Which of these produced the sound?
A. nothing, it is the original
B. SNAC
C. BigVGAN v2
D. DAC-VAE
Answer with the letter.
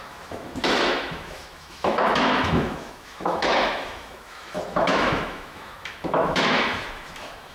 D